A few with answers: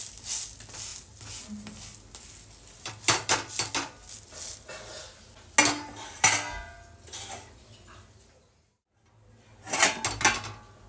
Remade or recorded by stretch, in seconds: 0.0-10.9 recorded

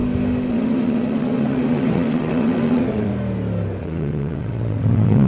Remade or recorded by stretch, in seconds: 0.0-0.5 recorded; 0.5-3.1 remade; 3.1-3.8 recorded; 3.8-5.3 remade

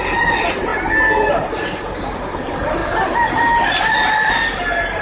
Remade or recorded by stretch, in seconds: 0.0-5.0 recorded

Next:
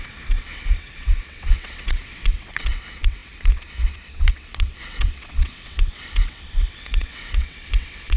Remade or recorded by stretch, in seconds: 0.0-8.2 remade